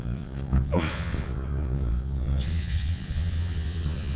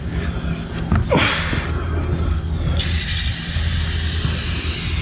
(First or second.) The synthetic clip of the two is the first